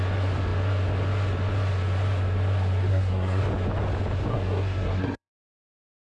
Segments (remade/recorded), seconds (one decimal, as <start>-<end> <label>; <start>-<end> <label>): 0.0-2.9 recorded; 2.9-3.4 remade; 3.4-4.3 recorded; 4.3-5.3 remade; 5.3-6.0 recorded